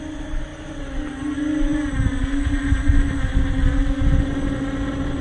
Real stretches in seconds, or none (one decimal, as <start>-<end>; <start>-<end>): 0.0-5.2